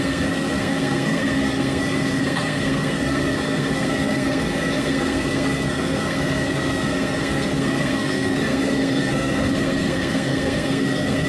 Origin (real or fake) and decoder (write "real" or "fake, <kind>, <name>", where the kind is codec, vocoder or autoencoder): fake, codec, SNAC